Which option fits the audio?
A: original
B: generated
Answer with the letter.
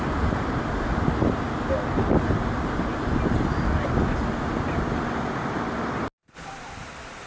A